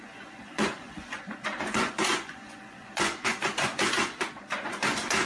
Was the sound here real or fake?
fake